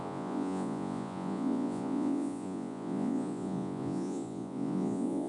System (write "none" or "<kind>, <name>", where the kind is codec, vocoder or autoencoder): vocoder, Vocos